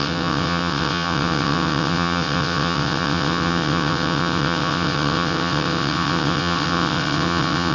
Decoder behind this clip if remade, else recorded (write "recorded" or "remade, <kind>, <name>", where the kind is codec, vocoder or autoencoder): remade, vocoder, WaveNeXt